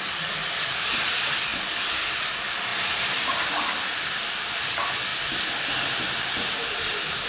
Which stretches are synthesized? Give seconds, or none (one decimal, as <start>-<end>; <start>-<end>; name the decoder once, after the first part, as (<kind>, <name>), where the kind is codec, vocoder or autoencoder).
5.1-6.7 (vocoder, BigVGAN v2)